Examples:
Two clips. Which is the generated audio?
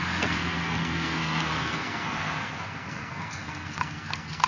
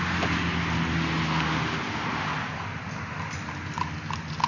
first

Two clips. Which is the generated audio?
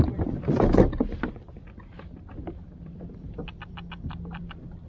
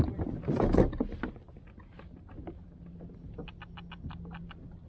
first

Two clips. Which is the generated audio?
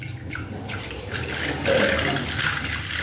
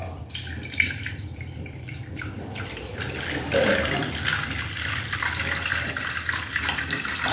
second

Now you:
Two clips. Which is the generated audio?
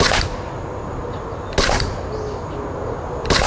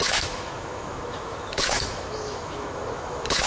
second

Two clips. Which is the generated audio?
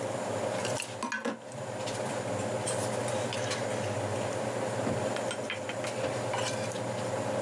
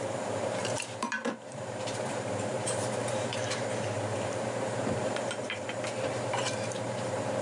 second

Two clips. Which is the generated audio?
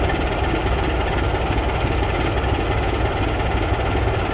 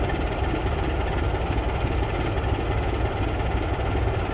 second